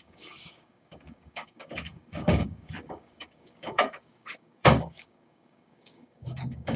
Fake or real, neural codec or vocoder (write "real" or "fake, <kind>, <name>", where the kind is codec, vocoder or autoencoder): fake, codec, DAC